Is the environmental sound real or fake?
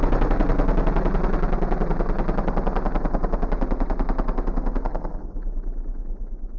real